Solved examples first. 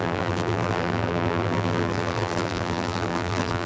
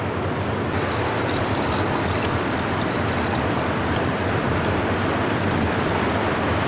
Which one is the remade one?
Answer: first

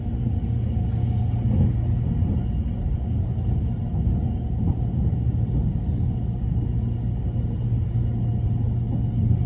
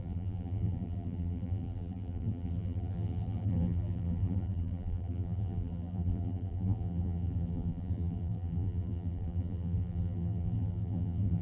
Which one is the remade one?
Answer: second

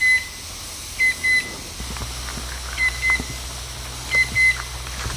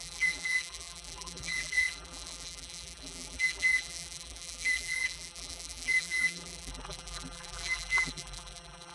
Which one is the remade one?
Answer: second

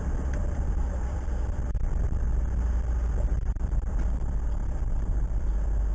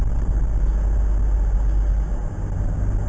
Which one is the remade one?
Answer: first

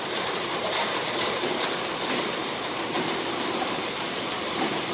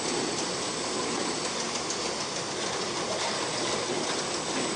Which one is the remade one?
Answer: first